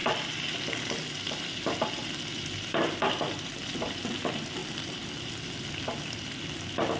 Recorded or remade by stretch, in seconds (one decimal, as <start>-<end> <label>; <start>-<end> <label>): 0.0-3.8 remade; 3.8-4.6 recorded; 4.6-5.3 remade; 5.3-7.0 recorded